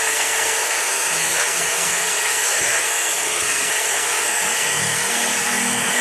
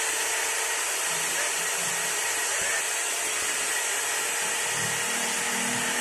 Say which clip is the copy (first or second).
first